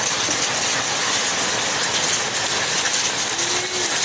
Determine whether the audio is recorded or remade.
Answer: recorded